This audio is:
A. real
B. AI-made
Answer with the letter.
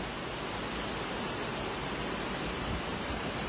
A